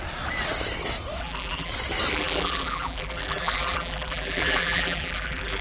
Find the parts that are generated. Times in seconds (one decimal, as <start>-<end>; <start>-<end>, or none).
1.2-1.7; 2.1-5.6